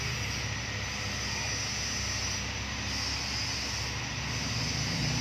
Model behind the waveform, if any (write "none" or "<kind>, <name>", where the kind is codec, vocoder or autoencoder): none